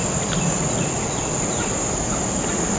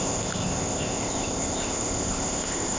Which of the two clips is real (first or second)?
first